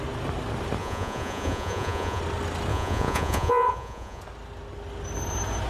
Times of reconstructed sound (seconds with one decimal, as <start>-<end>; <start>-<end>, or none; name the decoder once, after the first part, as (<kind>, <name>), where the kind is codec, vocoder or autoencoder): 0.8-2.2 (vocoder, Vocos); 2.7-4.2